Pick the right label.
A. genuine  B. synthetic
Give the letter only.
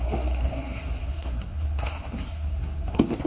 B